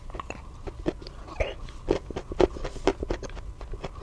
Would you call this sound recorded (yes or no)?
yes